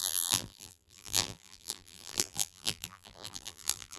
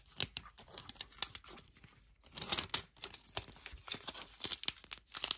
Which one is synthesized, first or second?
first